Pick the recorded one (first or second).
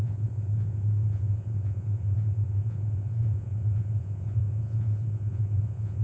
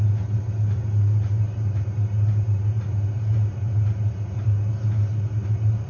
second